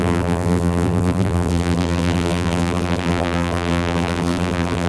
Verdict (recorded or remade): remade